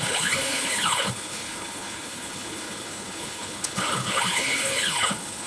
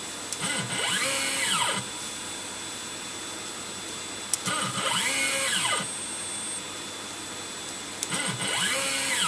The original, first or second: second